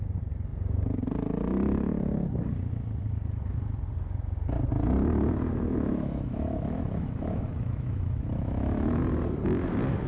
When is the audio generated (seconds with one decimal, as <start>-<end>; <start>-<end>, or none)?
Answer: 5.5-9.0